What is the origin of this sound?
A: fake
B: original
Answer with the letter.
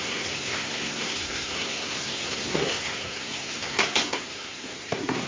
A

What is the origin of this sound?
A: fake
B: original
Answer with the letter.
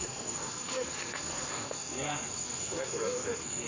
A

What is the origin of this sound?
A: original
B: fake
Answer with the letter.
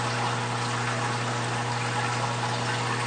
A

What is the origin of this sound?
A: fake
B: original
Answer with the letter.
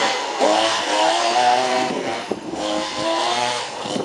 A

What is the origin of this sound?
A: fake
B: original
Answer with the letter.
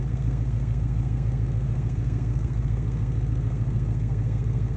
A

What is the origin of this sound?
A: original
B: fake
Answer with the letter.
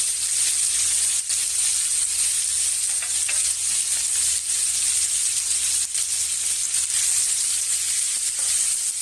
A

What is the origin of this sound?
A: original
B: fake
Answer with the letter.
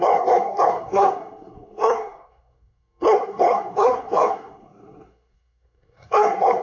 B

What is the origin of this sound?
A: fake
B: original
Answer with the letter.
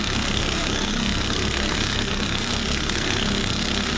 A